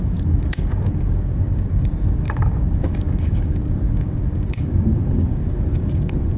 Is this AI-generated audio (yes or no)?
yes